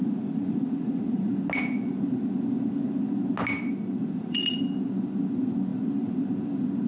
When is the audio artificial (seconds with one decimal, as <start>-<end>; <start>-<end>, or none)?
0.0-1.3; 4.0-4.5

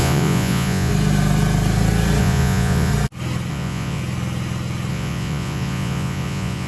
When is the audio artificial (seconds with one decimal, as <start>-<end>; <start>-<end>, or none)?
0.0-0.9; 2.2-2.9; 3.5-4.0; 4.9-6.7

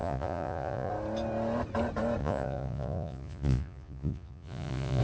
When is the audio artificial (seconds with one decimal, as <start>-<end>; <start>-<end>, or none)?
0.0-0.9; 2.2-5.0